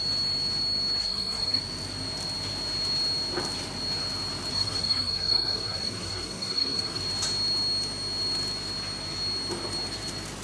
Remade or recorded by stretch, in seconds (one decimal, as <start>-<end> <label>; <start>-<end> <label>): 0.0-1.0 recorded; 1.0-1.6 remade; 1.6-4.5 recorded; 4.5-7.0 remade; 7.0-10.4 recorded